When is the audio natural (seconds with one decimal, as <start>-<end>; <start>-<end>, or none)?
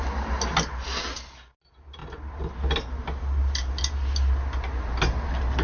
0.0-5.6